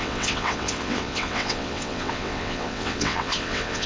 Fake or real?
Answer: fake